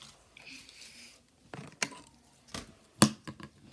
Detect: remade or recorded recorded